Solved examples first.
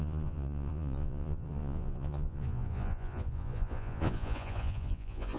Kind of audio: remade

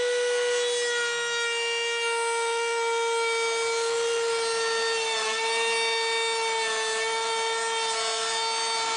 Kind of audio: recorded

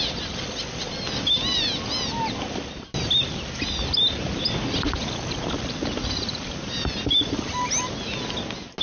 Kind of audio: recorded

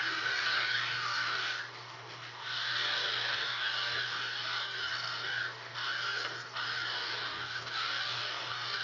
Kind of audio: remade